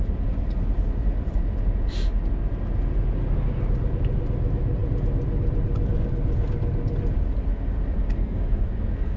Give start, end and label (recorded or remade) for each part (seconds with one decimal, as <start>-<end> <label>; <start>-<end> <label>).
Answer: 0.0-8.2 recorded; 8.2-9.2 remade